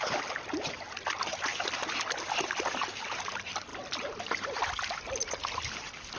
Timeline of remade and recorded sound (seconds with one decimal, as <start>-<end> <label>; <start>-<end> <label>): 0.0-6.2 recorded